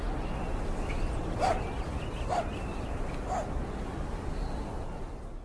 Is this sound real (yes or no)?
yes